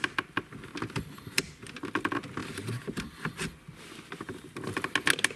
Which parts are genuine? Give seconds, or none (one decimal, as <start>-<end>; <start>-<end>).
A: 0.0-5.4